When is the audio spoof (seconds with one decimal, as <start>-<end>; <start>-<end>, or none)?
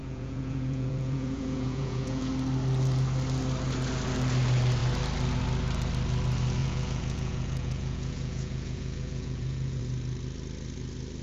0.0-2.3; 6.6-9.8